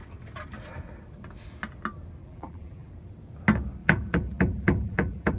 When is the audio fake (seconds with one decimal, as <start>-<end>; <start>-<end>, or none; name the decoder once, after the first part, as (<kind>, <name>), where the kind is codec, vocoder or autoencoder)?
2.2-2.9 (vocoder, BigVGAN v2); 3.8-5.4

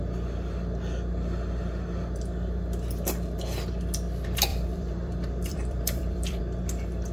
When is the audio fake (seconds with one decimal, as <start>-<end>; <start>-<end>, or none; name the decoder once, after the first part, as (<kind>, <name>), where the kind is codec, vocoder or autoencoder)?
4.5-6.4 (vocoder, BigVGAN v2)

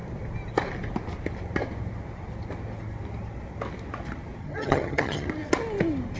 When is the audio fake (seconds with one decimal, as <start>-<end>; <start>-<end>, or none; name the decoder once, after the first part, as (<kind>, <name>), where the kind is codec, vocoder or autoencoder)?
4.4-5.3 (vocoder, HiFi-GAN)

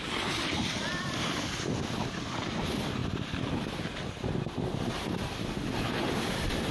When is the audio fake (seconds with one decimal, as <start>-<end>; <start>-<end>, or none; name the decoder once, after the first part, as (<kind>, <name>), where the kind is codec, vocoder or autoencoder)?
none

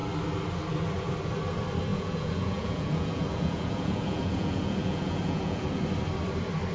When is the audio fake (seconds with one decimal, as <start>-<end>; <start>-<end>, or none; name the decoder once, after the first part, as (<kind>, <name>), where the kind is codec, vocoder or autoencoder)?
1.9-5.8 (vocoder, Vocos)

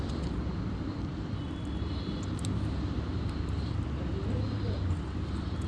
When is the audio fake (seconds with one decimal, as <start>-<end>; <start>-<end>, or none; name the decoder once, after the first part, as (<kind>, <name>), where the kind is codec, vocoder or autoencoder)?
none

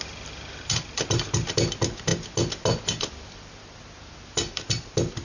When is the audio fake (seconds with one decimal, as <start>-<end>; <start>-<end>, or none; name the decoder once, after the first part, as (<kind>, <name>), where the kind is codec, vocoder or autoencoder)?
none